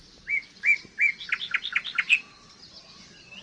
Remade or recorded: recorded